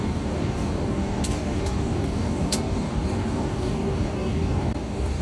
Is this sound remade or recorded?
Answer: remade